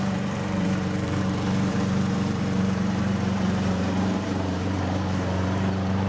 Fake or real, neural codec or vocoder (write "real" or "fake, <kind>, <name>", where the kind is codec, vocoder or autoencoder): fake, vocoder, BigVGAN v2